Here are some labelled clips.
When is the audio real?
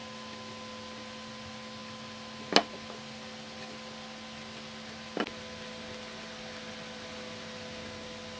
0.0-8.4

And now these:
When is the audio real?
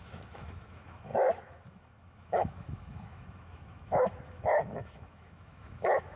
none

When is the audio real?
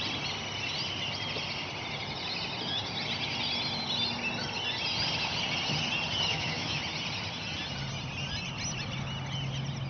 0.0-6.3; 6.8-9.9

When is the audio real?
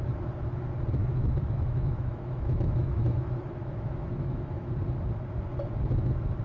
0.0-1.0; 4.7-6.4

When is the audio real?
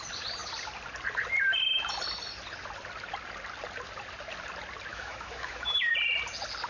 0.0-4.9; 5.9-6.7